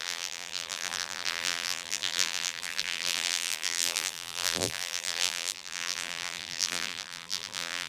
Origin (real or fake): fake